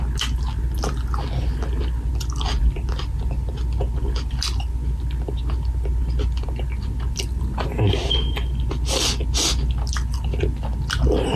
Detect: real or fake real